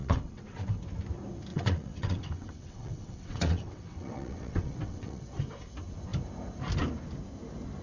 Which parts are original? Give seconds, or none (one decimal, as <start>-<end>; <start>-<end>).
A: 0.7-1.5; 5.4-7.8